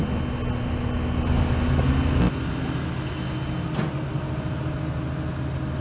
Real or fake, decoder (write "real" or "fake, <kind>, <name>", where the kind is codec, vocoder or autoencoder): real